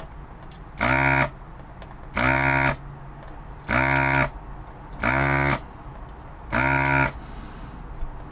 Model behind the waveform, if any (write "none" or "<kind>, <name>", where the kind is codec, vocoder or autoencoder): none